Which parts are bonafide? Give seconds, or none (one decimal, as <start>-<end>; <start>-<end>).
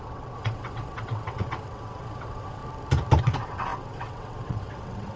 2.6-3.2